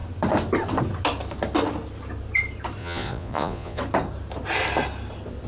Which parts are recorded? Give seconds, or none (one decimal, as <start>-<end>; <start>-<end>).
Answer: 0.0-2.8; 3.8-5.5